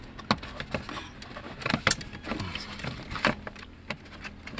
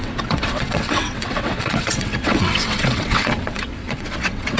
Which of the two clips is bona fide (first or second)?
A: first